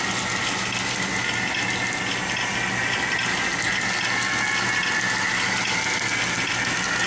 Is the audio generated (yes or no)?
no